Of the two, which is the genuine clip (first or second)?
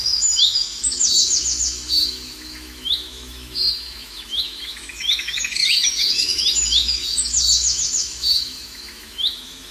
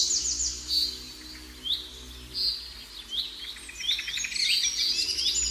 second